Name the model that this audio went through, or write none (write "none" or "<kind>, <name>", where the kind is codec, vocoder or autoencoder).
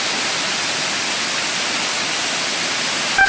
none